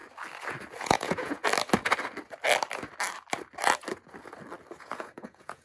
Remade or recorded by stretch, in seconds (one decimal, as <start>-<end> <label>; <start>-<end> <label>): 0.0-0.8 recorded; 0.8-1.4 remade; 1.4-4.8 recorded; 4.8-5.6 remade